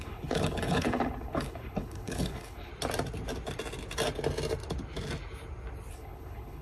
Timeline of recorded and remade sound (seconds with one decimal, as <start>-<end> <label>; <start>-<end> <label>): 0.0-2.7 remade; 2.7-5.9 recorded; 5.9-6.6 remade